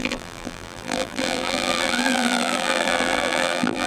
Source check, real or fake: fake